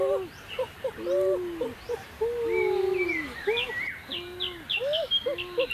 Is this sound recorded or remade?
recorded